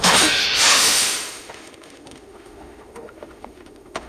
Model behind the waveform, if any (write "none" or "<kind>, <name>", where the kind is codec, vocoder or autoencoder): autoencoder, DAC-VAE